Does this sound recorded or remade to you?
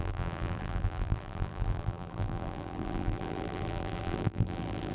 remade